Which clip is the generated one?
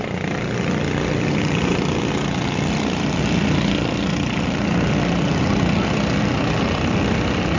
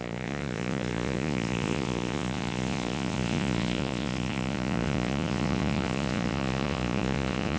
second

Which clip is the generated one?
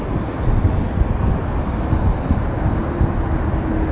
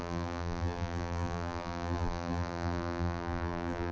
second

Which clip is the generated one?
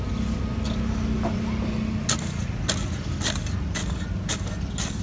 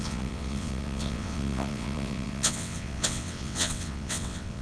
second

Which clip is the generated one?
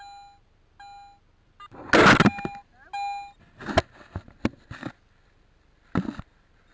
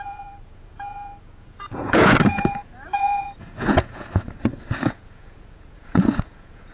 second